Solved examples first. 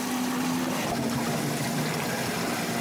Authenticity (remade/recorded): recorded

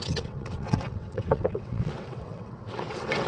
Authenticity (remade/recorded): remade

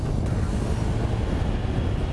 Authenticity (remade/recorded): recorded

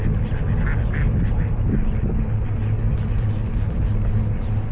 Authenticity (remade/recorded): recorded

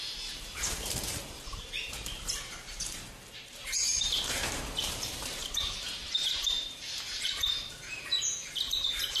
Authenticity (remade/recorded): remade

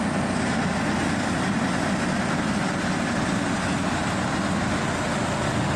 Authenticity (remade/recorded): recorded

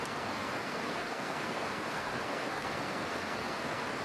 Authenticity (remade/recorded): remade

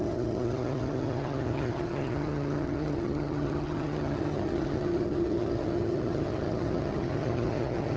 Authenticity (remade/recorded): remade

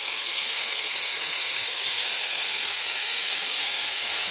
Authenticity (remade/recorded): remade